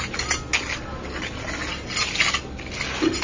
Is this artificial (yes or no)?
no